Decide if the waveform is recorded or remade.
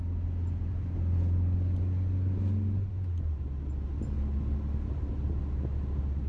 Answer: recorded